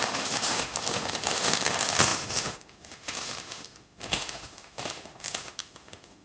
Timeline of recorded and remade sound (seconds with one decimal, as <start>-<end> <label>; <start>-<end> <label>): 0.0-6.2 remade